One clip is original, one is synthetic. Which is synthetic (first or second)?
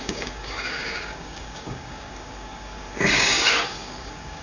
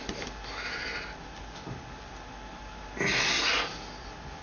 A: first